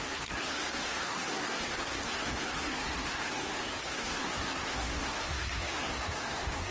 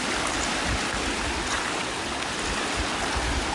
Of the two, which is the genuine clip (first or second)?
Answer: second